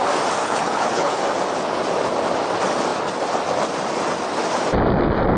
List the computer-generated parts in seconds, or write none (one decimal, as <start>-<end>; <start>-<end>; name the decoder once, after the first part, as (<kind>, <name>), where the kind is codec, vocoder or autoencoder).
0.4-1.2 (codec, HILCodec)